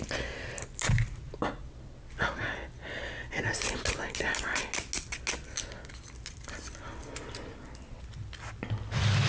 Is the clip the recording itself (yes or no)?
yes